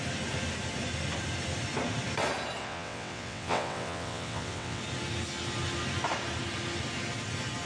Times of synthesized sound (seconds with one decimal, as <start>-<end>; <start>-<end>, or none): 2.6-4.8